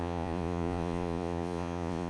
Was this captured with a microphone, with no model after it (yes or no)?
no